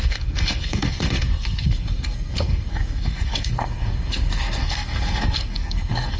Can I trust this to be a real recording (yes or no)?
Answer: no